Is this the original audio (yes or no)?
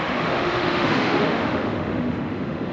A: no